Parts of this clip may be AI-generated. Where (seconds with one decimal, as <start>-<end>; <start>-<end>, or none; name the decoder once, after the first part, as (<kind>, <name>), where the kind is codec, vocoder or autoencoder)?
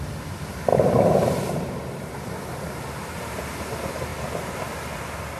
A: 0.7-3.5 (vocoder, BigVGAN v2)